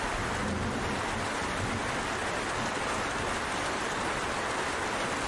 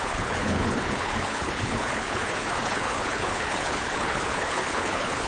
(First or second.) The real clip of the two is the first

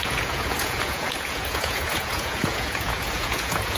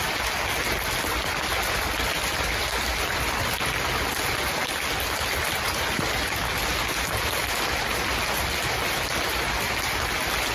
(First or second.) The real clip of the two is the second